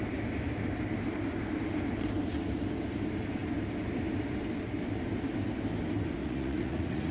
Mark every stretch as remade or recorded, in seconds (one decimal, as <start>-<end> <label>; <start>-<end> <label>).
0.0-6.2 recorded; 6.2-7.1 remade